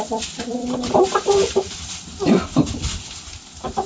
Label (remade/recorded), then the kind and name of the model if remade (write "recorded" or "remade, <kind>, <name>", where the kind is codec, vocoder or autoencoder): remade, vocoder, BigVGAN v2